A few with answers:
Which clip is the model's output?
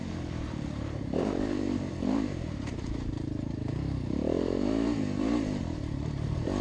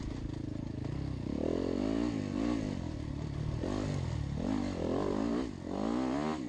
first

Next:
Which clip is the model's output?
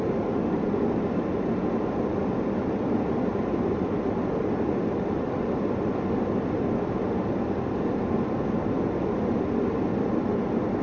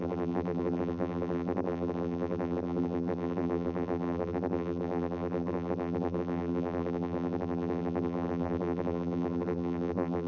second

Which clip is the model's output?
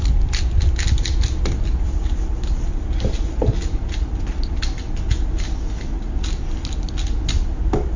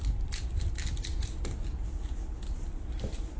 second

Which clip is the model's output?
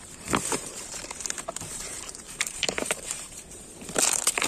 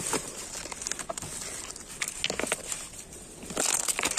first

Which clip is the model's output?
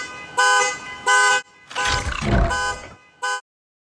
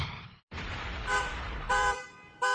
second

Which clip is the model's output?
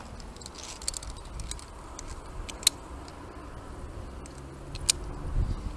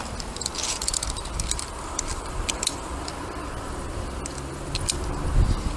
second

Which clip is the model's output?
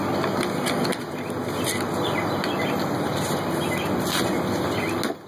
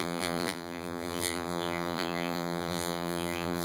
second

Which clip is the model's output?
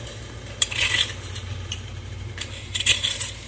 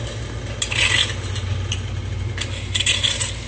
first